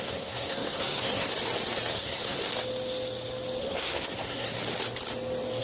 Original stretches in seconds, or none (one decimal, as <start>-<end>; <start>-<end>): 1.3-1.9; 2.4-3.6; 4.6-5.6